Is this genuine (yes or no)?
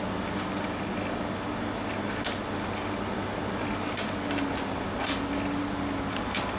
yes